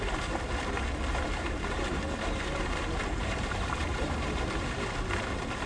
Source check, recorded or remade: remade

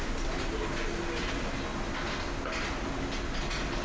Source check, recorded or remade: recorded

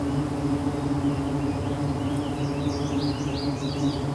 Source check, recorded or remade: recorded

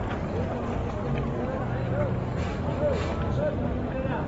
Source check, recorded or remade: recorded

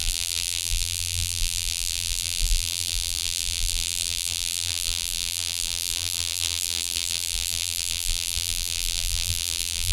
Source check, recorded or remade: remade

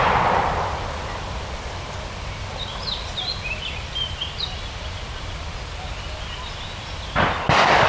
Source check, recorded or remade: recorded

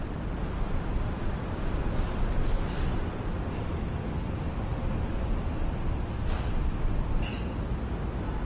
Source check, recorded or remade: recorded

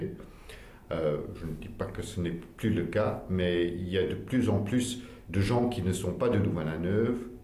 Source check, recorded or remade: recorded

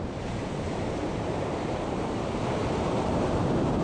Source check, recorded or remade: remade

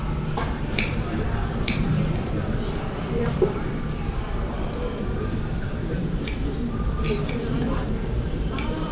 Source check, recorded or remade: remade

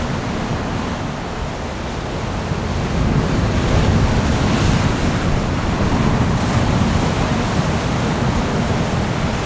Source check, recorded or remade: recorded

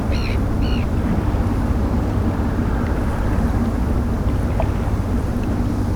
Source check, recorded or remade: recorded